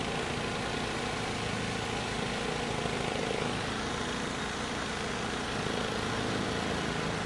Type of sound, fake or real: real